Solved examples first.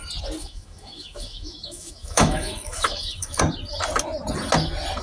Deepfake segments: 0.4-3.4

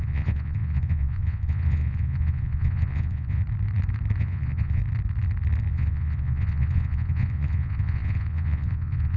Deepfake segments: 0.0-3.4; 4.2-4.8; 5.7-9.2

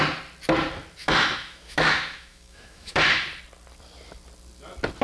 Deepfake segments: 1.0-3.0

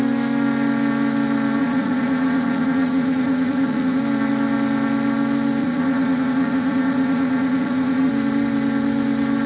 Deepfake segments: 1.6-4.0; 5.6-8.1

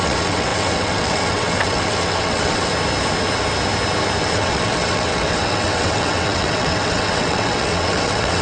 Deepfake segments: 0.0-2.7; 4.2-8.4

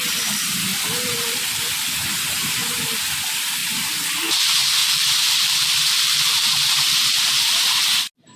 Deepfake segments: 0.7-1.7; 3.6-4.2; 4.8-7.4

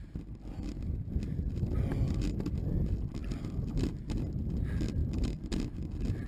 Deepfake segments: none